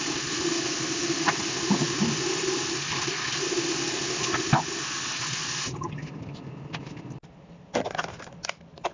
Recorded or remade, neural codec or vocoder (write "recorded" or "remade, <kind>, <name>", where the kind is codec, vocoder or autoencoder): recorded